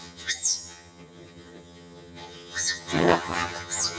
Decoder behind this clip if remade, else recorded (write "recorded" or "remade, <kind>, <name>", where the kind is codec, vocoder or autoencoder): remade, vocoder, HiFi-GAN